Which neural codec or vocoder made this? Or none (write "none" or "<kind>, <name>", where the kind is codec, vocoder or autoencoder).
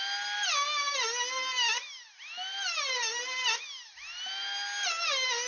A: none